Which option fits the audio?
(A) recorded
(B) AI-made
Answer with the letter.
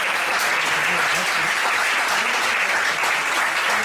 A